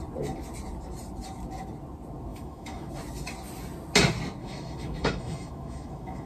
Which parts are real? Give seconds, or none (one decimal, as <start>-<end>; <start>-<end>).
0.0-2.3; 2.9-4.4